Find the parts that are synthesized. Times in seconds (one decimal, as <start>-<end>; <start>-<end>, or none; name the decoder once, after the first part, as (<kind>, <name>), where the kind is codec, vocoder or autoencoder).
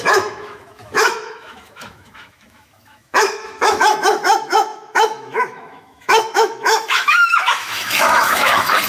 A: 0.0-8.9 (autoencoder, DAC-VAE)